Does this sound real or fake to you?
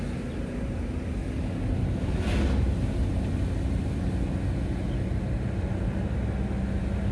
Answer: real